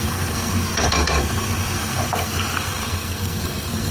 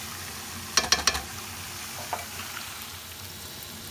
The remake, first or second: first